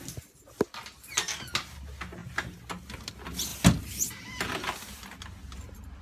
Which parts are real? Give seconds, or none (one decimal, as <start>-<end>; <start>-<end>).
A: 0.0-6.0